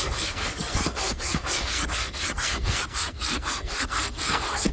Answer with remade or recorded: remade